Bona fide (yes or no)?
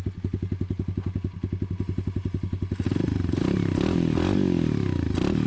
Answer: yes